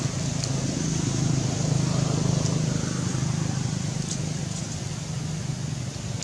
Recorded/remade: recorded